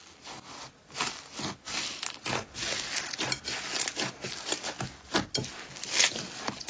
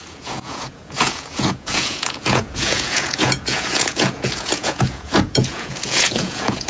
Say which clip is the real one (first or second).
first